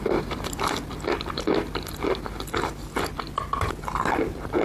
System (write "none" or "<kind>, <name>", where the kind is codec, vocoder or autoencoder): none